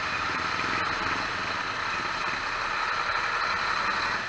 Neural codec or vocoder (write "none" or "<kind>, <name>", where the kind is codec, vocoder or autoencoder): none